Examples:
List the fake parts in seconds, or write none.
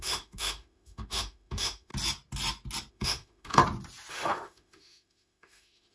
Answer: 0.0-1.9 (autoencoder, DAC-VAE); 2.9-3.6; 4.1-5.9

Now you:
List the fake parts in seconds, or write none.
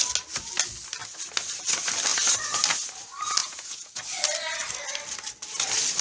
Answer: 3.4-4.0 (vocoder, Vocos)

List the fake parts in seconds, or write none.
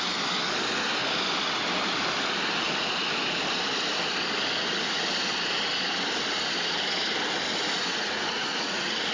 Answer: 7.9-9.1 (vocoder, Vocos)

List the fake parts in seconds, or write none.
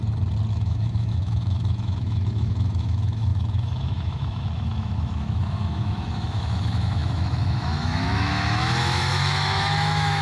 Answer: 0.5-10.2 (autoencoder, DAC-VAE)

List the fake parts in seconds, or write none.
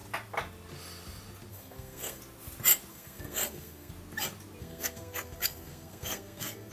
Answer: 1.5-2.2 (codec, SNAC); 2.9-3.9; 4.6-6.7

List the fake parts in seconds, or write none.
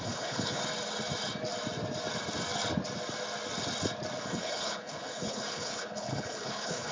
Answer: 0.0-0.6 (codec, HILCodec); 4.2-6.9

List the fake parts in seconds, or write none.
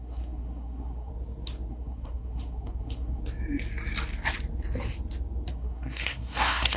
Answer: 0.0-1.1 (codec, SNAC); 1.7-3.2; 5.5-6.8